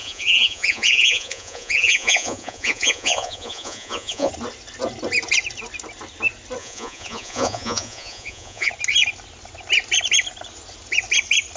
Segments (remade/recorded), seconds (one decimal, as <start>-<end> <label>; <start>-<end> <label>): 0.0-4.3 remade; 4.3-6.6 recorded; 6.6-8.7 remade; 8.7-11.6 recorded